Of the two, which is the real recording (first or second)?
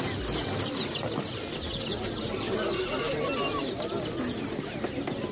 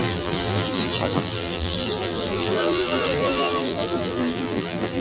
first